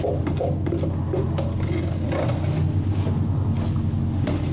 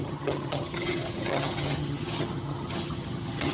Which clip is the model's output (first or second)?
second